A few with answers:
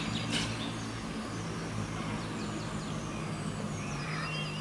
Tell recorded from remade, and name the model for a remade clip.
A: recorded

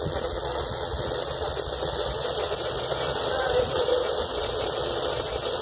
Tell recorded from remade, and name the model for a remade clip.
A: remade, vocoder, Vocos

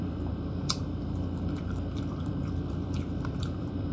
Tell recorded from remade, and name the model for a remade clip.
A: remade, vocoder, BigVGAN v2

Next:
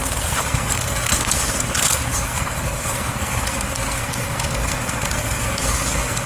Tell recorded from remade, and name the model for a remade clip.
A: remade, codec, SNAC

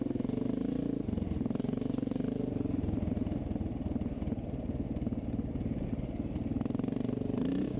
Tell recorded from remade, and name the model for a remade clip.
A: recorded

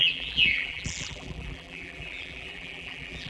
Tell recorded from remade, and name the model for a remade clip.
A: remade, vocoder, BigVGAN v2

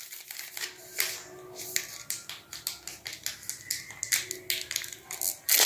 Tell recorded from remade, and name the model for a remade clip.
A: recorded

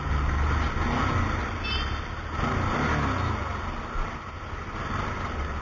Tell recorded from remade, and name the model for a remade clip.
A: recorded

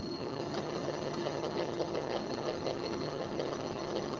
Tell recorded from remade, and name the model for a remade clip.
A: remade, vocoder, HiFi-GAN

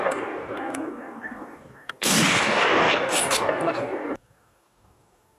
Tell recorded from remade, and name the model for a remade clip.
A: remade, codec, DAC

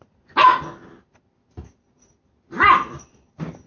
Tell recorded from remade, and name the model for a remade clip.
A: recorded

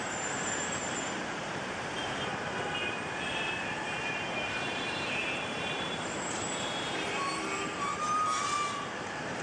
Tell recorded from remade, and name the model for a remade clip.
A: remade, vocoder, BigVGAN v2